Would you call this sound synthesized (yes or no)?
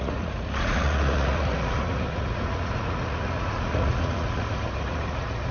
yes